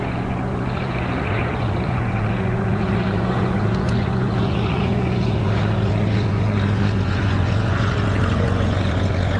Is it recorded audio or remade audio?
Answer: remade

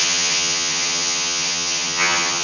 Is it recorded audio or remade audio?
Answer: remade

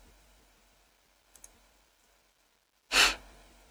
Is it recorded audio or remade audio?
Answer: recorded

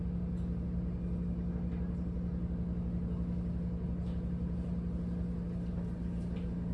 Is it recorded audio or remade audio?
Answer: recorded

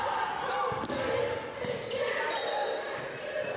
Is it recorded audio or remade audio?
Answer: recorded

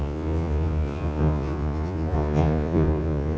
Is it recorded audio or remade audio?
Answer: remade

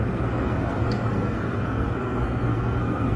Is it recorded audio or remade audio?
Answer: remade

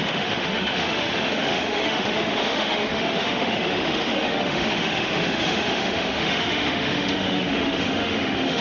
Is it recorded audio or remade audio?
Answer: remade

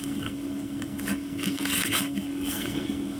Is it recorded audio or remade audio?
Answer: remade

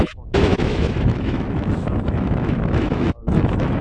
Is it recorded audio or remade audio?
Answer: remade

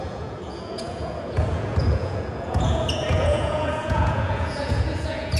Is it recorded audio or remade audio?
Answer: remade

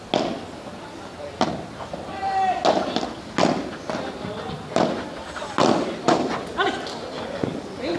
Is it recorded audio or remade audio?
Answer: recorded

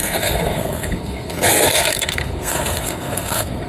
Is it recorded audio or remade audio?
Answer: remade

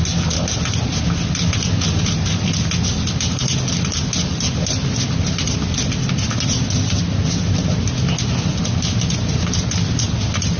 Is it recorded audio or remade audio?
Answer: recorded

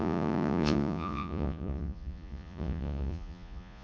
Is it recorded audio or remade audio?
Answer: remade